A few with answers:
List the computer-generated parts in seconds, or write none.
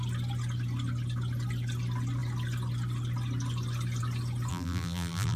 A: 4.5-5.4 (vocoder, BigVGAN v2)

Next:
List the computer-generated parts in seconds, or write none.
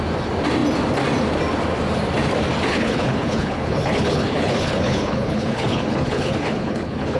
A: 2.7-7.2 (codec, HILCodec)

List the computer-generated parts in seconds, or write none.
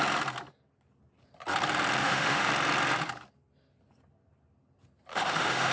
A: 2.0-2.5 (autoencoder, DAC-VAE); 5.1-5.7